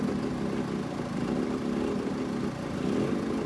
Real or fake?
real